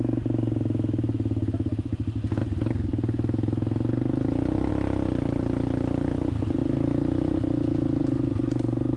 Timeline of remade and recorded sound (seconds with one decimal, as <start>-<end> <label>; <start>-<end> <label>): 0.0-9.0 recorded